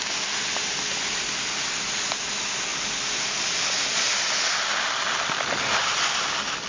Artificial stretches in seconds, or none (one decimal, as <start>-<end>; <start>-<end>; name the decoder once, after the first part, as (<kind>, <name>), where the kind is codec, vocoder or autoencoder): none